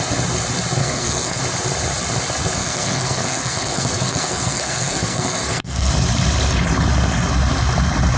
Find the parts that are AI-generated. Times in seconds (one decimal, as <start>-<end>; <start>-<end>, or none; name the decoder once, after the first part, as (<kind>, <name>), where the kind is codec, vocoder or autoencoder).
0.8-1.4 (codec, SNAC); 2.6-5.9